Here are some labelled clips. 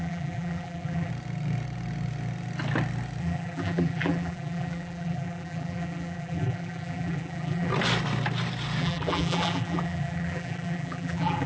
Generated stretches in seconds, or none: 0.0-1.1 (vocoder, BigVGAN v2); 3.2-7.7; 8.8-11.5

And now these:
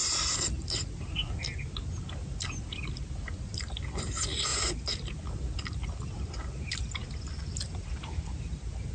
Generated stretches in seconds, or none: none

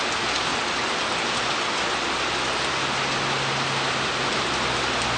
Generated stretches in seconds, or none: none

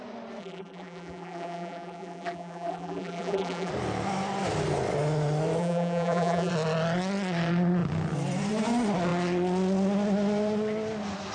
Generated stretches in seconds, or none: 0.4-3.7 (vocoder, BigVGAN v2); 5.6-6.5

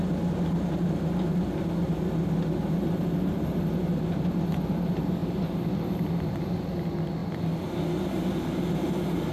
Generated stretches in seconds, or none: none

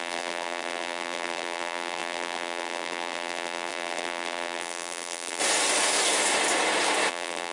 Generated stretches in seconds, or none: 0.0-5.4 (vocoder, BigVGAN v2); 7.1-7.5